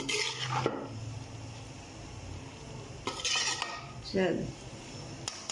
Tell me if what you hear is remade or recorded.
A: recorded